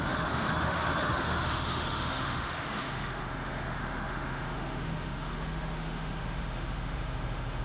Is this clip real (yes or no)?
no